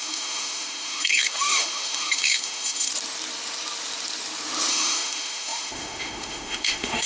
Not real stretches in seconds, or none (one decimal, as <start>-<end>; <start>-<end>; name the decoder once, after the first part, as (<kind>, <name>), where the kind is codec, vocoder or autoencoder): 0.0-2.9 (autoencoder, DAC-VAE); 4.7-7.1